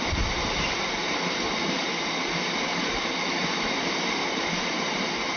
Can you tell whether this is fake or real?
fake